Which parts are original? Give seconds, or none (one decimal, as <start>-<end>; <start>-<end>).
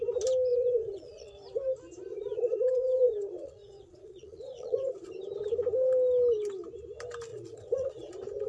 0.0-0.5; 1.3-2.1; 5.1-7.3; 8.1-8.5